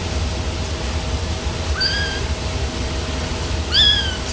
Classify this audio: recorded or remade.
recorded